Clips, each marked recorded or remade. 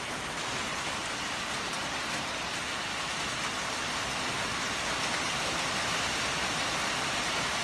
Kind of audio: recorded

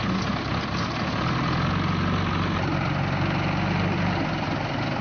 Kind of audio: recorded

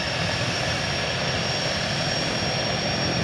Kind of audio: recorded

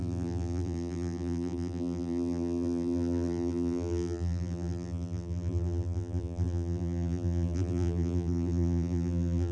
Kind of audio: remade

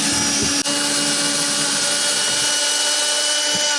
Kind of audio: recorded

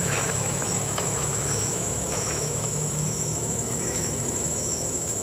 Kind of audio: remade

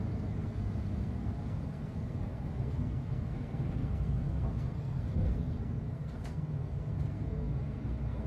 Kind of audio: remade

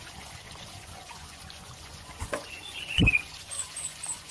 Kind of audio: remade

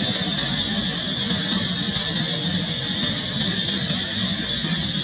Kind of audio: recorded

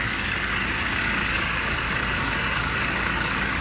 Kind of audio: remade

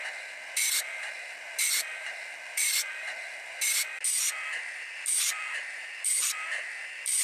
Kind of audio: recorded